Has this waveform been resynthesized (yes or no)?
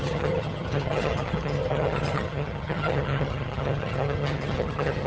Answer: yes